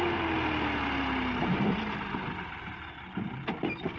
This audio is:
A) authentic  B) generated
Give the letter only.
A